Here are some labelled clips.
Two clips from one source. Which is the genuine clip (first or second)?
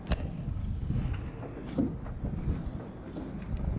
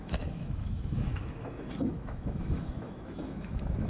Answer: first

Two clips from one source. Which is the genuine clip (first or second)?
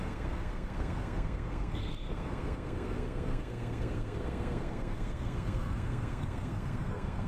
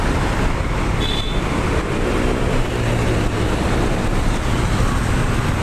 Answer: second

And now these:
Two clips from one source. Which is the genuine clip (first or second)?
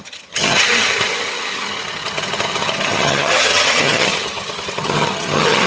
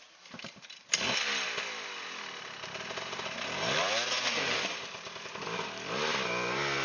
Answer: second